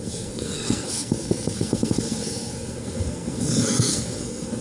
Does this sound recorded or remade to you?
remade